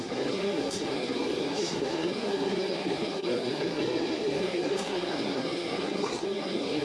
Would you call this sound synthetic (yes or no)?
yes